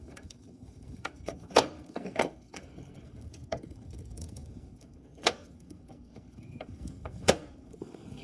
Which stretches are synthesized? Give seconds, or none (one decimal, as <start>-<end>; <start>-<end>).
0.0-8.2